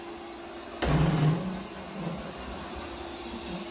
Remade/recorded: recorded